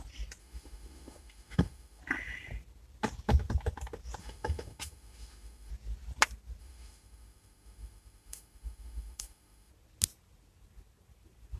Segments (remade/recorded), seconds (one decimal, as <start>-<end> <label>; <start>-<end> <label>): 0.0-0.4 recorded; 0.4-2.0 remade; 2.0-4.2 recorded; 4.2-5.7 remade; 5.7-6.6 recorded; 6.6-9.7 remade; 9.7-11.6 recorded